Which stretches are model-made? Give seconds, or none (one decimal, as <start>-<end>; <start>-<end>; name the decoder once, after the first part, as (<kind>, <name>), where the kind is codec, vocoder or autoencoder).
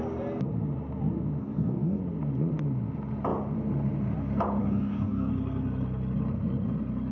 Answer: 1.4-2.0 (codec, DAC); 4.6-5.3